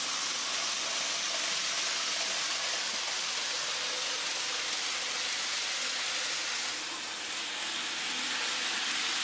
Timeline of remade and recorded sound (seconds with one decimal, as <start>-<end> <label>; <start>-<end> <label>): 0.0-9.2 recorded